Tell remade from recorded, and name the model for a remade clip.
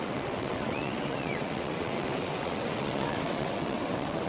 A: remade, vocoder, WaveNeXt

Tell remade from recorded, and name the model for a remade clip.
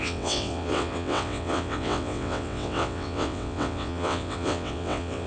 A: remade, vocoder, WaveNeXt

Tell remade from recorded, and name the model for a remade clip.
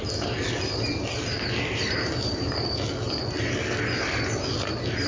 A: recorded